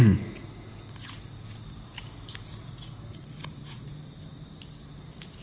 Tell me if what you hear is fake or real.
real